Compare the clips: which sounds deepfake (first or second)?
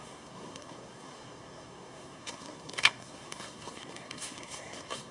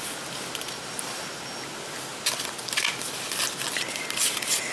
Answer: first